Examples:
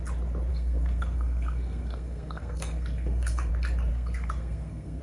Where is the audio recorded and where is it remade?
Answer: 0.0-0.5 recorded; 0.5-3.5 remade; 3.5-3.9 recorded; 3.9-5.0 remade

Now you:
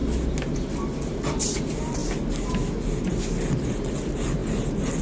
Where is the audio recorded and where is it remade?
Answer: 0.0-5.0 recorded

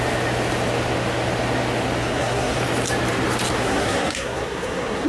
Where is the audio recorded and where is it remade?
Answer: 0.0-2.0 recorded; 2.0-2.6 remade; 2.6-3.6 recorded; 3.6-5.1 remade

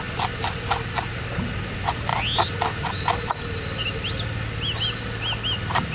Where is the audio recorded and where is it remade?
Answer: 0.0-5.9 recorded

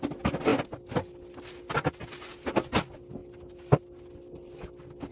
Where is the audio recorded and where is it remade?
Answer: 0.0-5.1 recorded

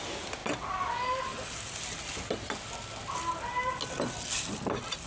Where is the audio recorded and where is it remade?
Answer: 0.0-5.1 recorded

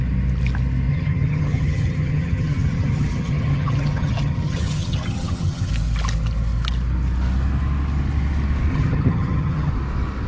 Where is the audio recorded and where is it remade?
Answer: 0.0-0.9 recorded; 0.9-5.7 remade; 5.7-8.7 recorded; 8.7-9.7 remade; 9.7-10.3 recorded